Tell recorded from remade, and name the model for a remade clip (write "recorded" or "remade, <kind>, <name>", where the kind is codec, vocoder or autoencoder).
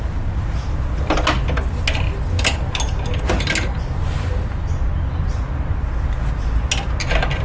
recorded